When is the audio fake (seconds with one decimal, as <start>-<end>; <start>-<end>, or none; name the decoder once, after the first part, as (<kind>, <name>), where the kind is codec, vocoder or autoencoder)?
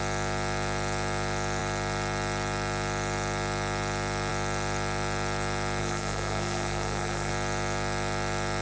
5.8-7.3 (codec, SNAC)